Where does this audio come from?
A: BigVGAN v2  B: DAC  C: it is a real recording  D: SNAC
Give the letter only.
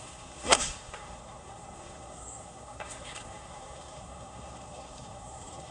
D